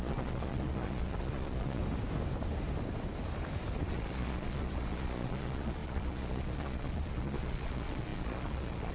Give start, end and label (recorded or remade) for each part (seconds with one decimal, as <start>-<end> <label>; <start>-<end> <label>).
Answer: 0.0-1.8 remade; 1.8-3.9 recorded; 3.9-8.9 remade

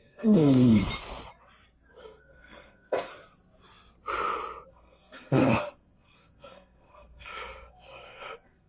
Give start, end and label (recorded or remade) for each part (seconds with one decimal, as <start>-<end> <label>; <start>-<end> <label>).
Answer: 0.0-0.8 remade; 0.8-2.0 recorded; 2.0-3.1 remade; 3.1-4.7 recorded; 4.7-8.7 remade

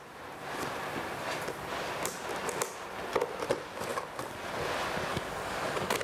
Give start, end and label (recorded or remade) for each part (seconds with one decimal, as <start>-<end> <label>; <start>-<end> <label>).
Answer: 0.0-5.1 recorded; 5.1-6.0 remade

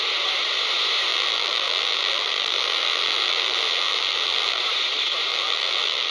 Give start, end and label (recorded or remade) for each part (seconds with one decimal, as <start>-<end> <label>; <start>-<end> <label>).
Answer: 0.0-1.1 recorded; 1.1-4.6 remade; 4.6-5.3 recorded; 5.3-6.1 remade

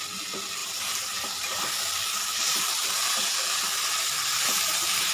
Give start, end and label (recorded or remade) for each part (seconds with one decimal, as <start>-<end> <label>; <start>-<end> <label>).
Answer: 0.0-0.6 recorded; 0.6-1.6 remade; 1.6-2.5 recorded; 2.5-5.1 remade

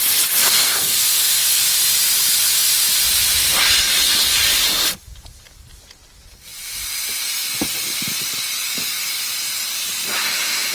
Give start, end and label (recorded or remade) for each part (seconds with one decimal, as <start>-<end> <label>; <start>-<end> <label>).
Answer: 0.0-0.4 recorded; 0.4-1.6 remade; 1.6-10.7 recorded

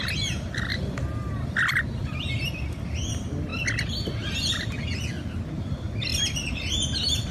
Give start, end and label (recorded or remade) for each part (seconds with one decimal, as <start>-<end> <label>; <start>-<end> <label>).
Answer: 0.0-7.3 recorded

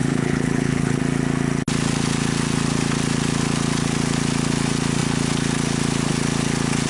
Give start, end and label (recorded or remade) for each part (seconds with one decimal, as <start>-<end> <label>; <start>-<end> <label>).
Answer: 0.0-1.0 remade; 1.0-6.9 recorded